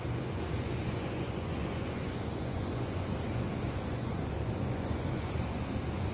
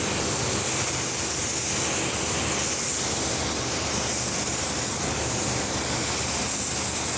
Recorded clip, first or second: second